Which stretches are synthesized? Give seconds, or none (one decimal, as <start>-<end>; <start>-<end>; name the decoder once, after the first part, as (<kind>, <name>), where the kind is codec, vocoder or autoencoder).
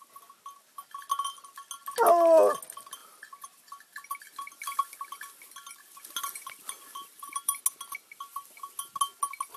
3.0-5.8 (vocoder, BigVGAN v2); 7.0-7.6